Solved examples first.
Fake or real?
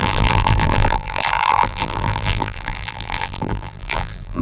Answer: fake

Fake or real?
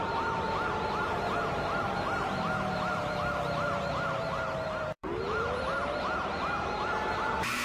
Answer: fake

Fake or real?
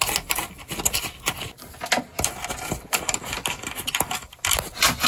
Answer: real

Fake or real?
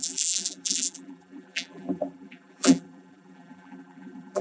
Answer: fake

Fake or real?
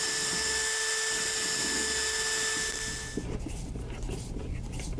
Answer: real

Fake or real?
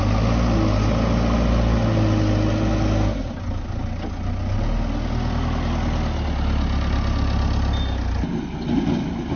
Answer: real